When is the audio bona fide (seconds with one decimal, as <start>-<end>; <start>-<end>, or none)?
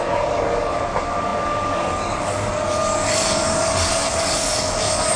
none